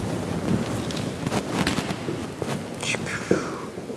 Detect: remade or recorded recorded